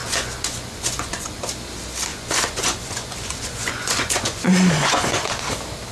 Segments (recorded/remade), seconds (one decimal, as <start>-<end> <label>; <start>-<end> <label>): 0.0-1.4 remade; 1.4-2.1 recorded; 2.1-5.4 remade; 5.4-5.9 recorded